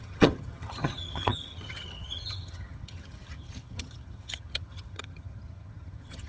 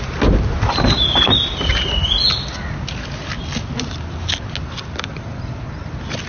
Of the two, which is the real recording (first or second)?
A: second